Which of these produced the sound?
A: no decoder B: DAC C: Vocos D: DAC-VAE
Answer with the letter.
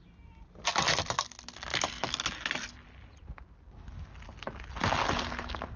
A